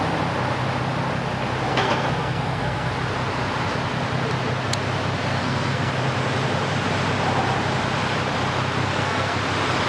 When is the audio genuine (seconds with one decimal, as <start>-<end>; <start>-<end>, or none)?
0.0-1.7; 2.9-5.3; 5.9-8.8; 9.4-9.9